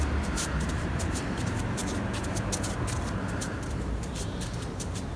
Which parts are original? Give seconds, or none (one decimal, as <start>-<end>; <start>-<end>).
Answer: 1.8-4.1